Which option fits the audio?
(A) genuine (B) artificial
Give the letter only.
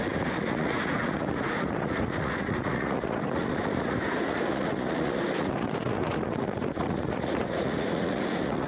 B